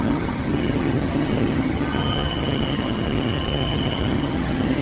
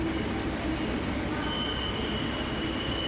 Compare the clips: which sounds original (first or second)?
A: second